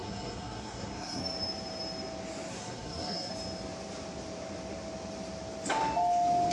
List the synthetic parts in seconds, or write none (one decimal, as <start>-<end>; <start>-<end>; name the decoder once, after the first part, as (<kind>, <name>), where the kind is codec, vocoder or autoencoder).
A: 0.0-1.2 (codec, SNAC); 2.5-3.3